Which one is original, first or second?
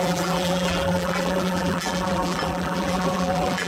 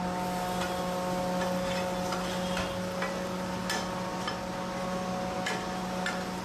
second